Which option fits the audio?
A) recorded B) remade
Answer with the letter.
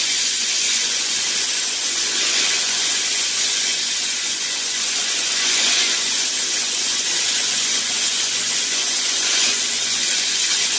B